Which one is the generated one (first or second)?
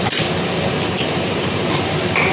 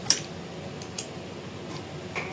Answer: first